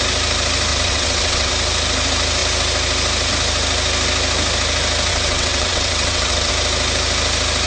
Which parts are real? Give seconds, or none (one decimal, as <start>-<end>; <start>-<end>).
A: 0.0-0.7; 1.5-5.1; 6.5-7.7